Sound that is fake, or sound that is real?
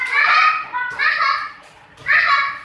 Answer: real